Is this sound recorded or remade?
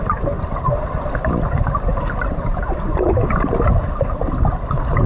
recorded